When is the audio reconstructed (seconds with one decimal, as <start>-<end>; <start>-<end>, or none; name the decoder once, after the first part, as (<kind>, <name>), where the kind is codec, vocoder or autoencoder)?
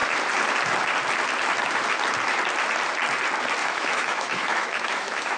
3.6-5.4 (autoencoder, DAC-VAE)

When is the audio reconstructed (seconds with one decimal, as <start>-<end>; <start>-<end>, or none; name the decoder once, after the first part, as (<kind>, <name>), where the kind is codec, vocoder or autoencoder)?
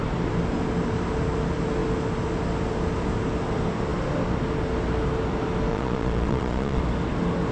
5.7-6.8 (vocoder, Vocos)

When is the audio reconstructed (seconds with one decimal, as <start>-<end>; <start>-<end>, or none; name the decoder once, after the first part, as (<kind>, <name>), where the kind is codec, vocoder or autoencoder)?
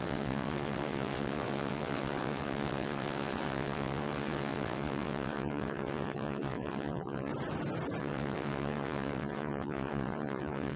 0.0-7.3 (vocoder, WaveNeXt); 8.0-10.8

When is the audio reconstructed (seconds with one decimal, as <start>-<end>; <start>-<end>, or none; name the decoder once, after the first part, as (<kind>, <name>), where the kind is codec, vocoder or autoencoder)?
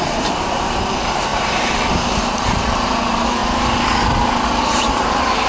0.0-3.4 (vocoder, BigVGAN v2); 4.6-5.5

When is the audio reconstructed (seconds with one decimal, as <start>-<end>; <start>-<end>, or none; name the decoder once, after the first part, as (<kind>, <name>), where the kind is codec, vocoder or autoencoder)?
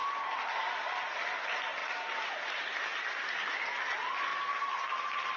0.0-0.7 (vocoder, BigVGAN v2); 1.8-3.5; 4.3-5.4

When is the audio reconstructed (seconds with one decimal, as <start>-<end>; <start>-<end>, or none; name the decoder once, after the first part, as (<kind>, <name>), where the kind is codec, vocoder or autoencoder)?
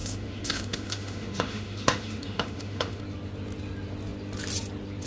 0.0-3.0 (autoencoder, DAC-VAE)